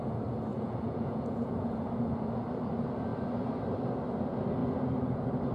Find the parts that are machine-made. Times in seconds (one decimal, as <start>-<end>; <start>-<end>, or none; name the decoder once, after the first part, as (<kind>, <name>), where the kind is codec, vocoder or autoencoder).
0.5-1.9 (vocoder, Vocos)